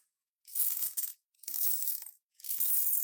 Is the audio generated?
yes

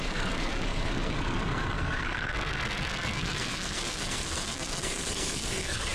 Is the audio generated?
yes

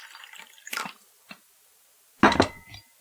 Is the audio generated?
no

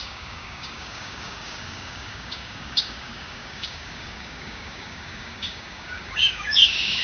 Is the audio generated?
yes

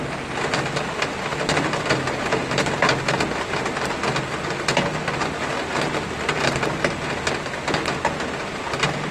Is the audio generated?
no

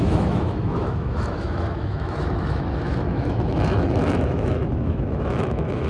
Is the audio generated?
yes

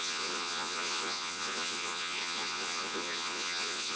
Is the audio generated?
yes